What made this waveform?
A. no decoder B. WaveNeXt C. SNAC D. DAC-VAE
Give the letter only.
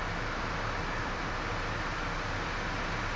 A